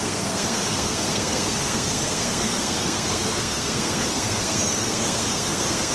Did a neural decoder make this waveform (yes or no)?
yes